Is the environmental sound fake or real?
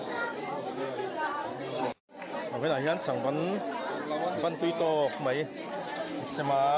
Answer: real